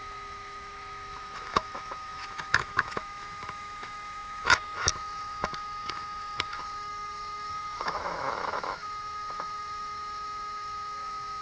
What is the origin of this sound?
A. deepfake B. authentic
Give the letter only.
A